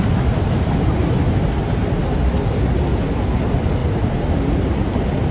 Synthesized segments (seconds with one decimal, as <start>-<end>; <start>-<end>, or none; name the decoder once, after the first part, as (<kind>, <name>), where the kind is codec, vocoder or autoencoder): none